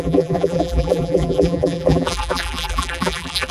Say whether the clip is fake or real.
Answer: fake